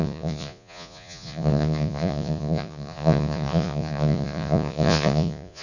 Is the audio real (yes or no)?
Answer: no